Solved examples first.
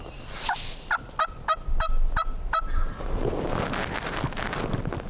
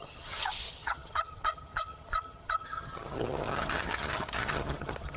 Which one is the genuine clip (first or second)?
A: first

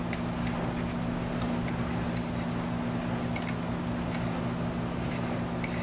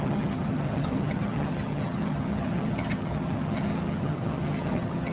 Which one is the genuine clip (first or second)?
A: first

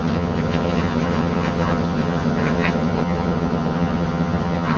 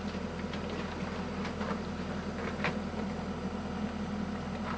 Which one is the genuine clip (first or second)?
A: second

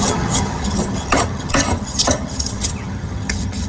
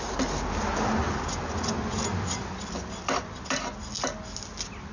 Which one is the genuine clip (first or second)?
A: second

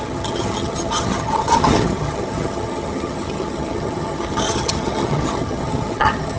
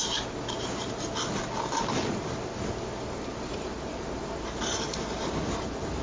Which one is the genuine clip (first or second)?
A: second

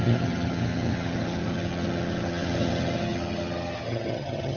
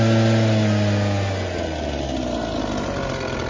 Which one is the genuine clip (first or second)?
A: second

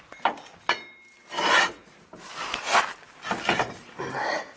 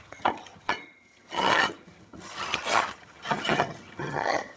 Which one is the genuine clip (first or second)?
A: first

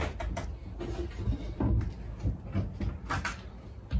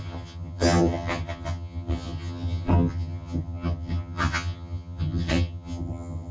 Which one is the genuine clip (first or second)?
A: first